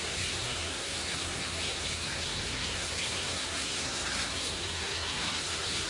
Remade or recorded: remade